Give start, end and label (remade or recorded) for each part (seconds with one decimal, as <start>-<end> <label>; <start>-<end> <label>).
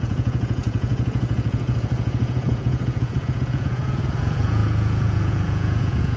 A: 0.0-6.2 remade